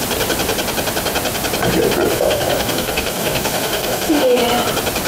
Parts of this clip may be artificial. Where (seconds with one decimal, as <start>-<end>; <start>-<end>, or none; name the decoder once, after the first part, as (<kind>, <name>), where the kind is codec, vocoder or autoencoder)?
2.1-4.4 (codec, DAC)